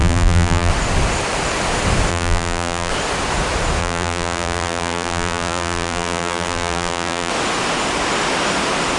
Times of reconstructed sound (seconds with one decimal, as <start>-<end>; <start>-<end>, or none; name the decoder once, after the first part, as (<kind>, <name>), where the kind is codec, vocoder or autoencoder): 0.0-0.7 (vocoder, BigVGAN v2); 2.1-2.9; 3.8-7.3